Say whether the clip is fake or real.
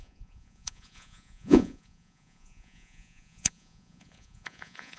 fake